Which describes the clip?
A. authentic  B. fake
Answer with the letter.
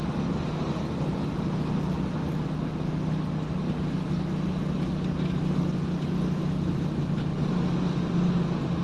A